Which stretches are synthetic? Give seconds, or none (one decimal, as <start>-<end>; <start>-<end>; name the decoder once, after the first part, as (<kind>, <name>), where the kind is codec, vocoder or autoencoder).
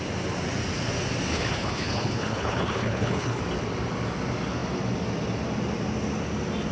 1.3-3.4 (codec, HILCodec)